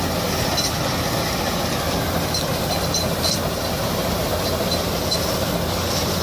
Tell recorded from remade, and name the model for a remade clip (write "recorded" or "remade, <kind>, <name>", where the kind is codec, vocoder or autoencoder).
recorded